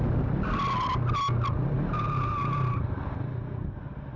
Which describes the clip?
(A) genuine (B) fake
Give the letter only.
A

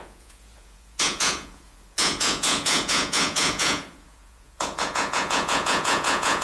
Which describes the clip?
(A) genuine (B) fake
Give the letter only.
B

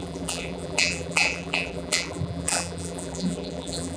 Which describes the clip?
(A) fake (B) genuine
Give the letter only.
A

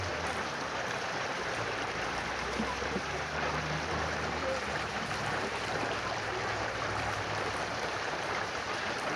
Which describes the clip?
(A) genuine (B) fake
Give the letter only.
B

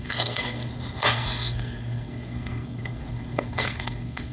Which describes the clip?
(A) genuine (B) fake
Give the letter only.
B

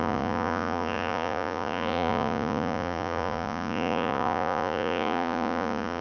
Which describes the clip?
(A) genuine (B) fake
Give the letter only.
B